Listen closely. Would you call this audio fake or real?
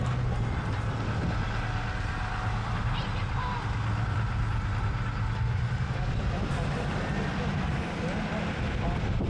real